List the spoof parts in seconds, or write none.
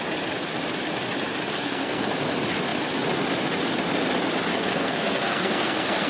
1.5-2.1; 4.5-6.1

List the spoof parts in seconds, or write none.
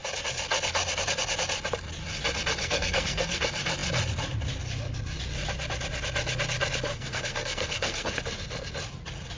2.6-3.4; 6.9-8.1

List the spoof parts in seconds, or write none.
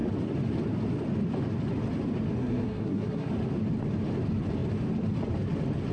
2.4-3.3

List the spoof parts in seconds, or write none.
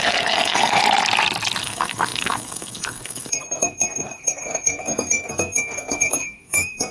0.0-0.8; 1.6-6.9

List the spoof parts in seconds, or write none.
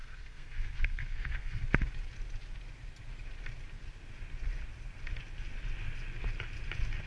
0.0-1.6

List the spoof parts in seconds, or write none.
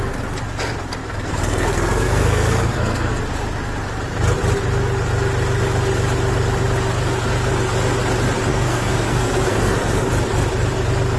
1.0-3.2; 8.5-10.1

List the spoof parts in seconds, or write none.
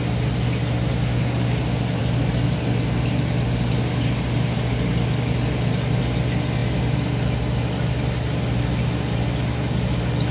none